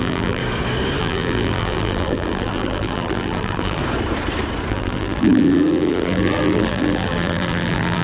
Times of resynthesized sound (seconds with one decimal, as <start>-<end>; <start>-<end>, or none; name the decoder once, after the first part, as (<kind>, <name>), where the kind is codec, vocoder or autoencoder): 0.0-0.4 (vocoder, BigVGAN v2); 1.0-3.8; 4.7-8.0